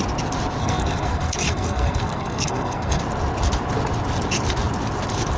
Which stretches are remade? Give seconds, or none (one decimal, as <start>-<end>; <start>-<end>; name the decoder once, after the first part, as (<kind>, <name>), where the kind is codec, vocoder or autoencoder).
0.6-3.0 (codec, SNAC)